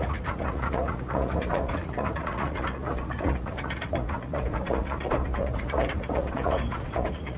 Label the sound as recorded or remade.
remade